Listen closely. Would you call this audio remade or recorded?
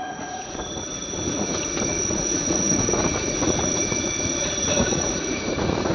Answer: remade